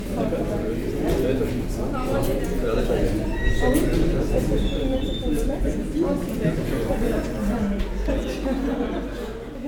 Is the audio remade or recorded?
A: recorded